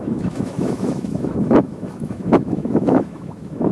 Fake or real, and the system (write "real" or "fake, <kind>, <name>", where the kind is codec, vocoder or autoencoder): fake, autoencoder, DAC-VAE